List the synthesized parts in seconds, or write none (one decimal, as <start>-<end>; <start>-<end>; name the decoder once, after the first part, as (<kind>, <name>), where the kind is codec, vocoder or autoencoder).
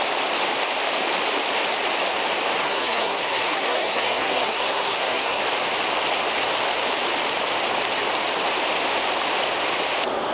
2.6-5.4 (codec, SNAC)